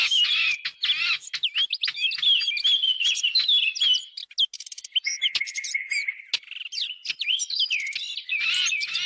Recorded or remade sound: recorded